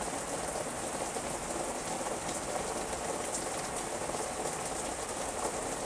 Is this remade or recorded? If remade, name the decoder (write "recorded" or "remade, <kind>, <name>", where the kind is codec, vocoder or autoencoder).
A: recorded